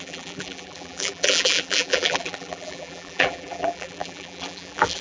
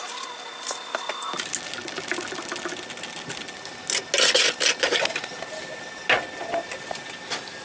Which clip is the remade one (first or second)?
first